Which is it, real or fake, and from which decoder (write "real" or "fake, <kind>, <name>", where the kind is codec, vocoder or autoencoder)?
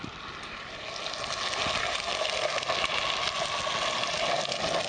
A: real